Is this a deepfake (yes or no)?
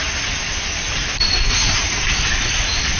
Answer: no